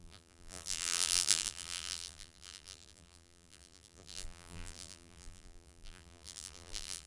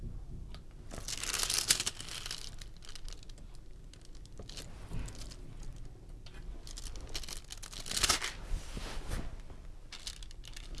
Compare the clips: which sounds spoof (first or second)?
first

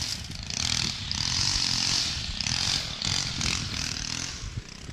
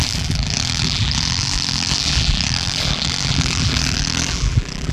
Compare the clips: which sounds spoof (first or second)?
second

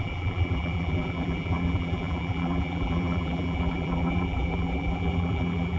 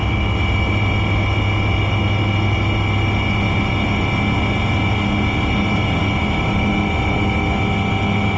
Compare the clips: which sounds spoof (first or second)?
first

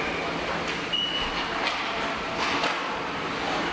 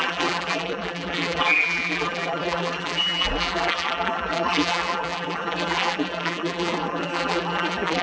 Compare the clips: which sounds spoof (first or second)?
second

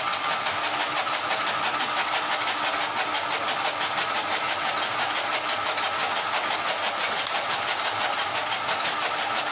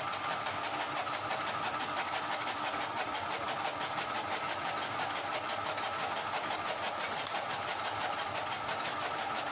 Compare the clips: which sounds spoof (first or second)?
second